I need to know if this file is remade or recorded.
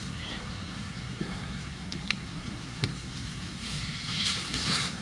remade